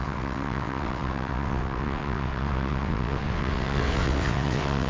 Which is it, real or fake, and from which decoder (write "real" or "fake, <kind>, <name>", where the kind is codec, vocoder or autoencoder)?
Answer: fake, vocoder, WaveNeXt